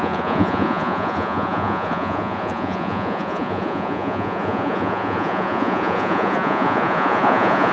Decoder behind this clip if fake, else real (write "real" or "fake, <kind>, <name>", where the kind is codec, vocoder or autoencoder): fake, vocoder, Vocos